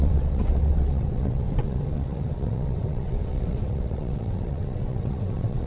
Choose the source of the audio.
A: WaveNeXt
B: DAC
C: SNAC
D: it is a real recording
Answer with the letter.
A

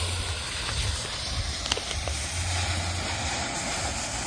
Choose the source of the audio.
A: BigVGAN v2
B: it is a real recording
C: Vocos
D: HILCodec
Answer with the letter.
B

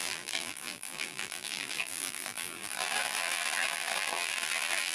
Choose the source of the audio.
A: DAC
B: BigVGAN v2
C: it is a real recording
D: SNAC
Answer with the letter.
B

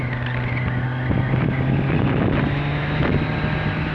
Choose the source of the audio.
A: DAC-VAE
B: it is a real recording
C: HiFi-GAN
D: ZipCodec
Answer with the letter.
B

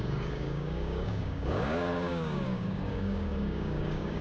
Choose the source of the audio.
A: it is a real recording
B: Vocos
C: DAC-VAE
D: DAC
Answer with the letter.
D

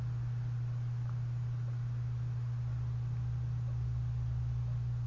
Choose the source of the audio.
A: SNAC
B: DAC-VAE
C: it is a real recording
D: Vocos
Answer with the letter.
C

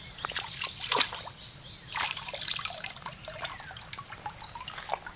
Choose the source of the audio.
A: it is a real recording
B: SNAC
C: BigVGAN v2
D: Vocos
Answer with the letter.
A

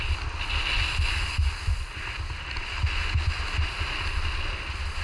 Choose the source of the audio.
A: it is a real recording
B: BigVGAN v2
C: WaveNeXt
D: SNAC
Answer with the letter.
A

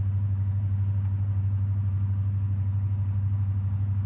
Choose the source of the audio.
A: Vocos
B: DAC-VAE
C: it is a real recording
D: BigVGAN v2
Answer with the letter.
D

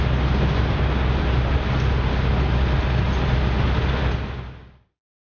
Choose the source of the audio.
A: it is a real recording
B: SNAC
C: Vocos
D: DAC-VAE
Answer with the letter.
A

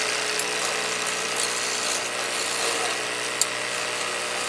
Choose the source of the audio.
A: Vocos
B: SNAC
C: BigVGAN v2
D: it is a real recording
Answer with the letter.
D